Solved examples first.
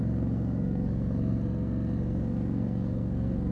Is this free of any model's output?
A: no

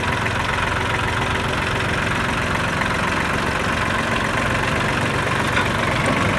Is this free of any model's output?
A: yes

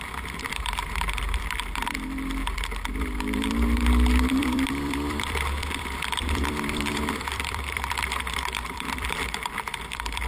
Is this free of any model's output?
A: no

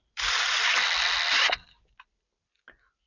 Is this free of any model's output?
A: no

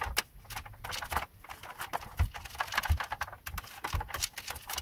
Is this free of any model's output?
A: yes